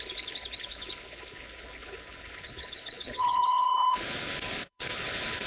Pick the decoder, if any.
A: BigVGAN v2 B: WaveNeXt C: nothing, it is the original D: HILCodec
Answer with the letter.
D